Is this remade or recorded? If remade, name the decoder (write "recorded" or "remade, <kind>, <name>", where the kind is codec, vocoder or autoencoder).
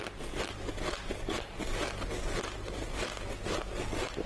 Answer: recorded